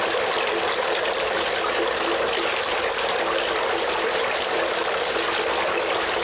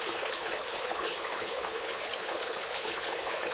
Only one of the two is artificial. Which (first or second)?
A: second